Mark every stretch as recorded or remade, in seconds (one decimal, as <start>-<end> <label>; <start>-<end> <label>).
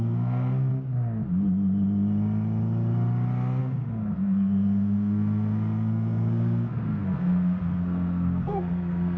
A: 0.0-0.7 remade; 0.7-3.6 recorded; 3.6-9.2 remade